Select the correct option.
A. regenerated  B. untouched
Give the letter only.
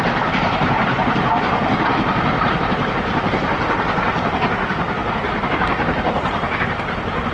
B